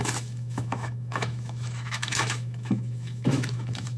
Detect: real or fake fake